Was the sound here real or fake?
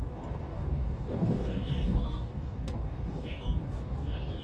fake